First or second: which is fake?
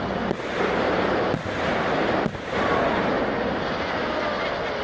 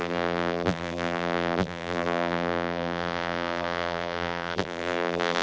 second